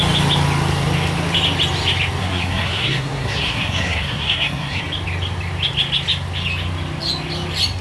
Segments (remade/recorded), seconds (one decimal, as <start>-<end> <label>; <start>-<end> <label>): 0.0-2.2 recorded; 2.2-4.8 remade; 4.8-7.8 recorded